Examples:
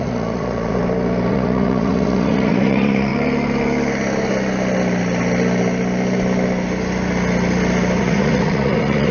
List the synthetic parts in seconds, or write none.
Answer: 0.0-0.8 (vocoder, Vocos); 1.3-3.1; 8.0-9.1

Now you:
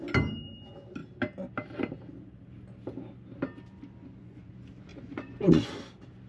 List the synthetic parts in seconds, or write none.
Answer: 4.0-4.5 (vocoder, Vocos); 4.9-5.7

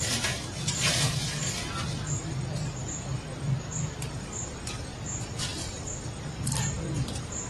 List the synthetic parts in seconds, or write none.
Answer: none

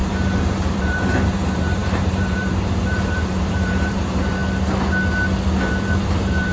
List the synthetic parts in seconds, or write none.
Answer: 0.7-4.4 (vocoder, BigVGAN v2); 5.7-6.5